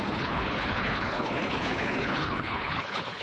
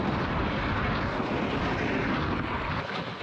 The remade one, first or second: first